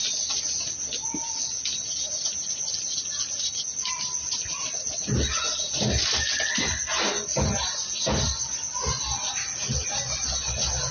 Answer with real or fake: real